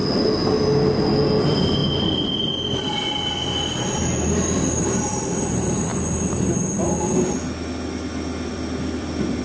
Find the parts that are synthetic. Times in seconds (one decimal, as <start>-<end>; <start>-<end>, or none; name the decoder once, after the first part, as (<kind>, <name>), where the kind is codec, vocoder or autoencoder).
1.4-1.8 (vocoder, BigVGAN v2); 4.0-5.9; 8.5-9.4